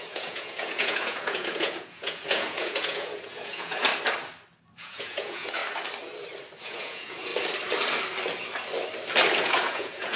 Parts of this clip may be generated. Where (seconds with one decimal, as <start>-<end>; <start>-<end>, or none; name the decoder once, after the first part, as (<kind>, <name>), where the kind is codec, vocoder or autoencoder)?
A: 0.0-3.9 (vocoder, Vocos); 4.7-5.6; 6.6-7.3; 9.4-10.2